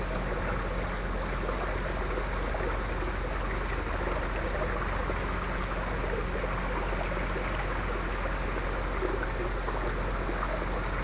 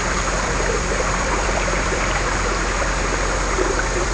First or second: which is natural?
first